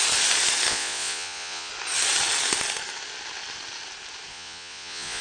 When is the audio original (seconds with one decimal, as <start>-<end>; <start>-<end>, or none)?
0.0-0.7; 1.7-4.3